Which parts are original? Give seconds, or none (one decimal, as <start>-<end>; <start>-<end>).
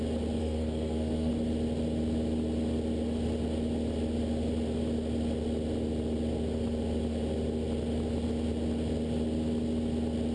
0.0-0.4; 1.3-10.3